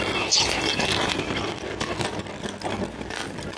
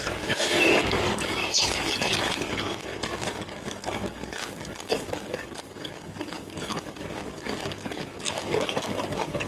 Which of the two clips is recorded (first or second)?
first